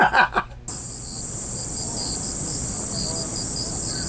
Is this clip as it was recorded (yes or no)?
yes